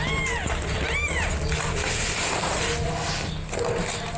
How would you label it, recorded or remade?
recorded